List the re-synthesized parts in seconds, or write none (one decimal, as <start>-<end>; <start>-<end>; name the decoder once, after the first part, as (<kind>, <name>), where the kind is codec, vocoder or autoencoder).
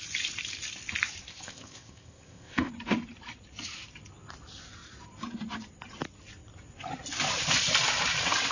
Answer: 1.3-2.7 (codec, ZipCodec)